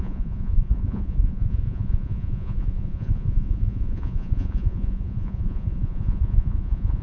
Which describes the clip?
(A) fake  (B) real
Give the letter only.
A